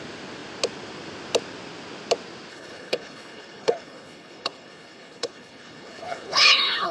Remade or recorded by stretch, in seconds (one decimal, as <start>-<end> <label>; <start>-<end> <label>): 0.0-2.5 recorded; 2.5-6.9 remade